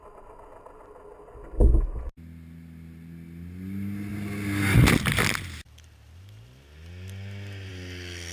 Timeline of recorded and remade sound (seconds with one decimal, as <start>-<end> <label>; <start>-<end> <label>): 0.0-8.3 recorded